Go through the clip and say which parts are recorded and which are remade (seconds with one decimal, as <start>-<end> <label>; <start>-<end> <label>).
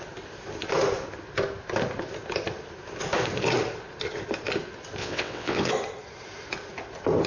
0.0-5.0 recorded; 5.0-5.7 remade; 5.7-7.3 recorded